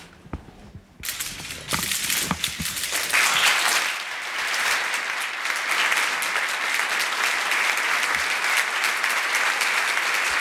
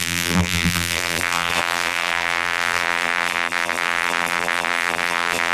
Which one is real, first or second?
first